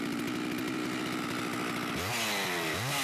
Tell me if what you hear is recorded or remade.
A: recorded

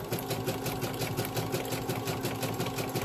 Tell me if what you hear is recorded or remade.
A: recorded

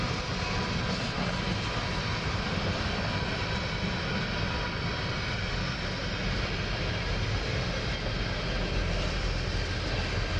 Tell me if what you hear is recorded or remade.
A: recorded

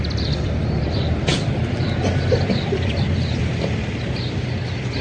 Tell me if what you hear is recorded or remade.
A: remade